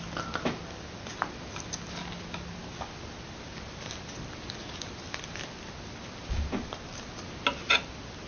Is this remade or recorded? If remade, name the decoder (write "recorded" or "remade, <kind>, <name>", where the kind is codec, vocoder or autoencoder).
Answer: recorded